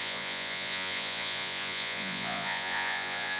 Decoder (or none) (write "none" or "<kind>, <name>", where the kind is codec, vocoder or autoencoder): vocoder, Vocos